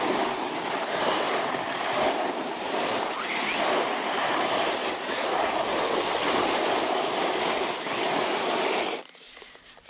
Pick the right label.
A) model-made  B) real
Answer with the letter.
B